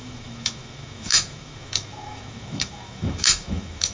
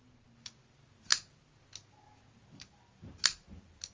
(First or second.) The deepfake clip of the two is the first